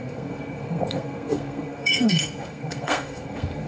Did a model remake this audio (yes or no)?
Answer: yes